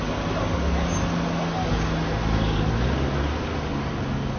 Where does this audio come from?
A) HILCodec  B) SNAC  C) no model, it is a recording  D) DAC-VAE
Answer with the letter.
C